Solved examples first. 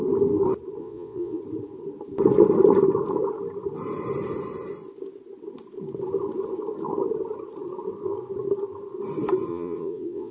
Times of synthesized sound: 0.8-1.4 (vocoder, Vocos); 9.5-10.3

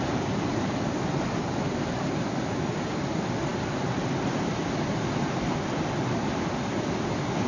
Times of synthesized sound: none

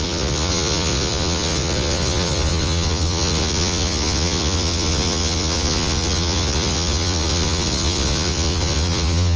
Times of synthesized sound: 0.0-9.4 (vocoder, Vocos)

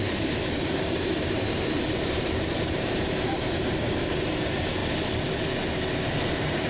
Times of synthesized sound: 0.0-4.8 (vocoder, BigVGAN v2); 6.3-6.7